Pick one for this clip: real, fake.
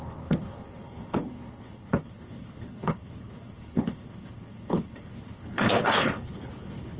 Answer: fake